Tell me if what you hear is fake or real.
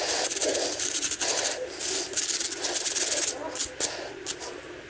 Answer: real